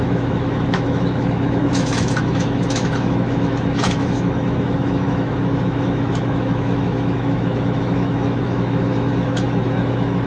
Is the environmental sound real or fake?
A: fake